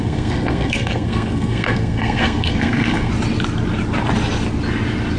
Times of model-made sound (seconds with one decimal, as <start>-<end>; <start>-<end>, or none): 0.0-3.1